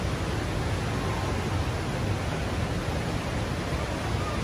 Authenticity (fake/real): real